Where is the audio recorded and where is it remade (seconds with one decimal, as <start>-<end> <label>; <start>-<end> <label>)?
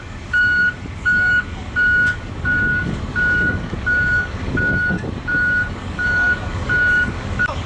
0.0-7.7 remade